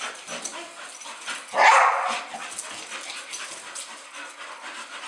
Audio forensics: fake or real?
real